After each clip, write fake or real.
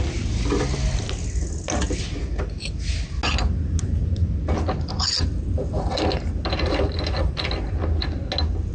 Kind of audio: real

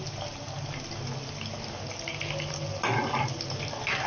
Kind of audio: real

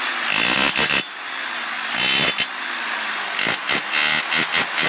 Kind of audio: real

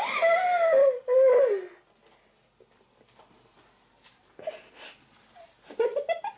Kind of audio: real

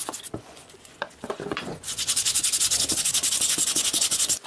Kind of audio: fake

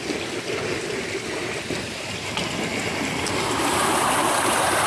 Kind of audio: real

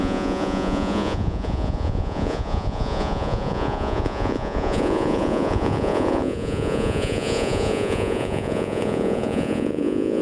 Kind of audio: fake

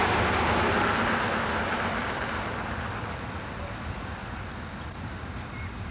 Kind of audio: real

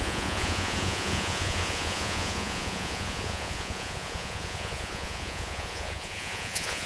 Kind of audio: fake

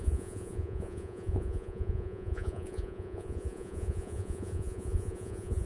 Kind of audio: fake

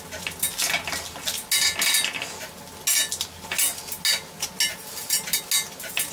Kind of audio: real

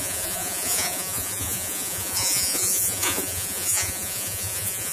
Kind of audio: fake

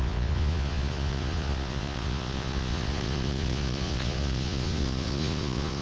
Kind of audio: fake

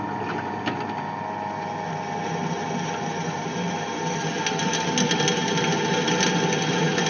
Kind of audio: real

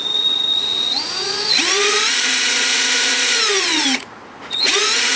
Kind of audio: fake